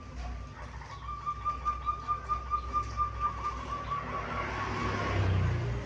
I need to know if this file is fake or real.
real